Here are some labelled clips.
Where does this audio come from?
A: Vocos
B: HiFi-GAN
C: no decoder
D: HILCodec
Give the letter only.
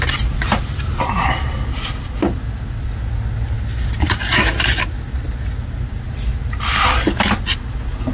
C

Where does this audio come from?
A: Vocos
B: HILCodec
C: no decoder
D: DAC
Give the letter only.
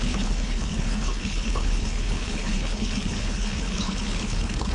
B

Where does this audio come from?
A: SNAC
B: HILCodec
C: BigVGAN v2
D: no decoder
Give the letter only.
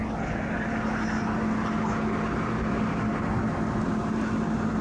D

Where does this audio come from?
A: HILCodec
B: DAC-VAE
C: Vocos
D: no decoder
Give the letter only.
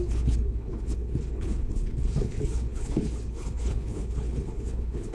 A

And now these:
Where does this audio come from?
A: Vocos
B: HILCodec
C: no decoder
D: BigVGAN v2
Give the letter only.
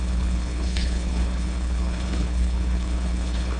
B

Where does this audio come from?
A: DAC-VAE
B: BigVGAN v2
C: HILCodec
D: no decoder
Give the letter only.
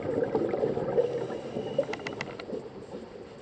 D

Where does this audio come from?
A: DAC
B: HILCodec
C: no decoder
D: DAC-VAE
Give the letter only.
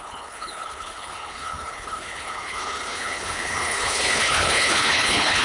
B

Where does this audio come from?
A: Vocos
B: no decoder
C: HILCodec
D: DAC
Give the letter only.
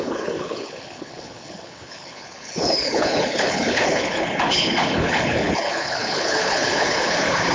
C